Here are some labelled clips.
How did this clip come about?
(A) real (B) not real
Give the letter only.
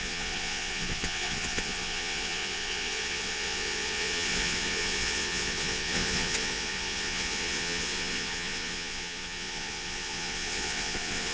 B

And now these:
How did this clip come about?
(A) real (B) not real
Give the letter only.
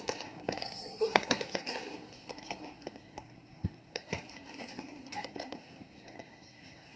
B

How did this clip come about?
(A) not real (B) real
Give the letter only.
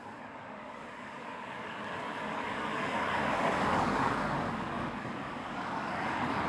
A